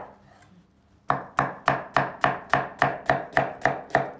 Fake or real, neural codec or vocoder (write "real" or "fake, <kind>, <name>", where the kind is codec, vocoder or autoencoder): real